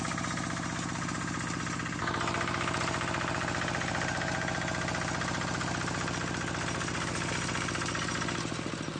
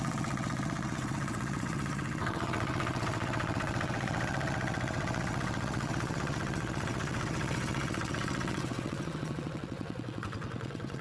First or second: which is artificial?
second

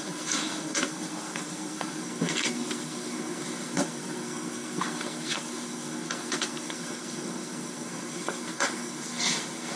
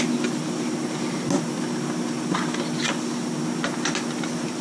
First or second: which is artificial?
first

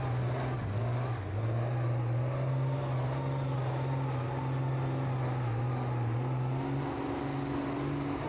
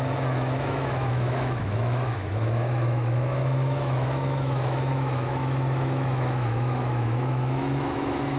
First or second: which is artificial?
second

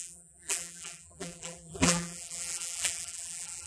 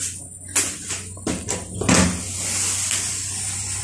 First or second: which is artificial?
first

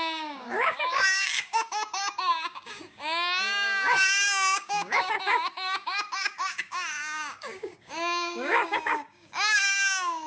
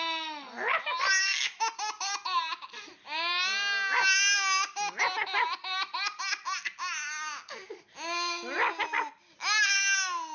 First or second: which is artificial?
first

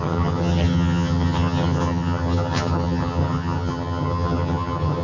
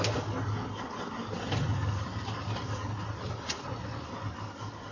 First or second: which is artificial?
first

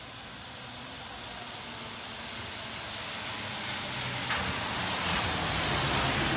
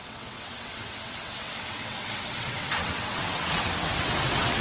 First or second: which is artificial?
second